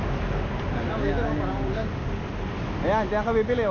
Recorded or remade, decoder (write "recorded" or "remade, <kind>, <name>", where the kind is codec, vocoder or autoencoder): recorded